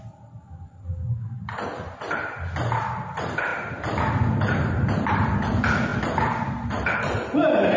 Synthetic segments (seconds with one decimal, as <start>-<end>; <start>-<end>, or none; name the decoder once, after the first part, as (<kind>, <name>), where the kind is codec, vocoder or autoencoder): none